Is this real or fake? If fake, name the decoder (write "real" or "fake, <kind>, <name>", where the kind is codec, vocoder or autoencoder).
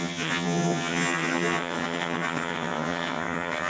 fake, vocoder, HiFi-GAN